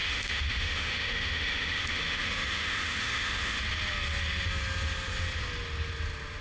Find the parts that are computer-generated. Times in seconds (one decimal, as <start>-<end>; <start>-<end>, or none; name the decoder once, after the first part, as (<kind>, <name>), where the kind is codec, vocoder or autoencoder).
0.0-3.6 (autoencoder, DAC-VAE)